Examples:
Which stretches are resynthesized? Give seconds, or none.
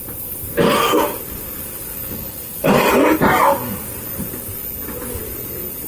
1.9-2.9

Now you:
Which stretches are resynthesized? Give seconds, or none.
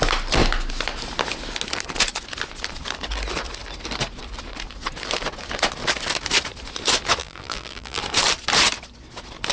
7.2-8.0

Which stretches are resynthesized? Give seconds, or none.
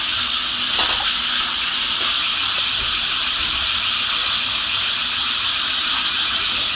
1.7-5.7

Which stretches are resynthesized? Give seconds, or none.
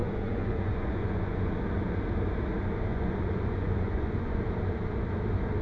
0.0-1.5; 2.9-4.4